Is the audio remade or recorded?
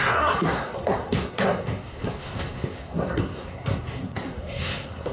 remade